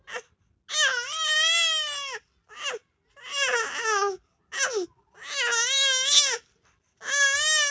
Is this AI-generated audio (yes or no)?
no